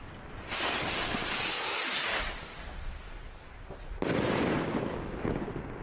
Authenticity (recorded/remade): recorded